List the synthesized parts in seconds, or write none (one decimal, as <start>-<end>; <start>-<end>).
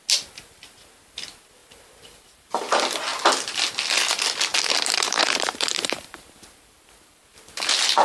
1.6-2.6; 4.5-7.2